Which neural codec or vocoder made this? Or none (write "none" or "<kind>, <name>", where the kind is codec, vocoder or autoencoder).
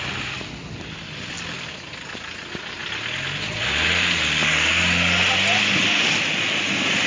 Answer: none